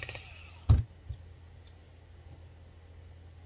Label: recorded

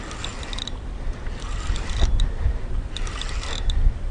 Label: recorded